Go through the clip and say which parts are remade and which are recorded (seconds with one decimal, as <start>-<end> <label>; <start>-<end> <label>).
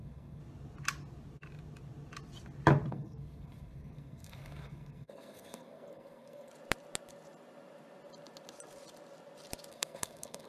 0.0-0.4 remade; 0.4-2.9 recorded; 2.9-6.5 remade; 6.5-9.7 recorded; 9.7-10.5 remade